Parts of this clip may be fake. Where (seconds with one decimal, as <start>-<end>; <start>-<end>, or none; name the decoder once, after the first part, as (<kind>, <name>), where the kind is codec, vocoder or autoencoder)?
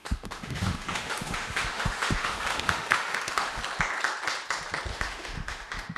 0.0-3.6 (autoencoder, DAC-VAE); 4.9-6.0